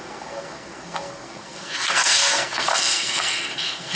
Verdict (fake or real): fake